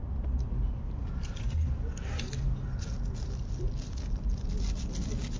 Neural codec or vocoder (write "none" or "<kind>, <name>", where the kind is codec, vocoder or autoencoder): none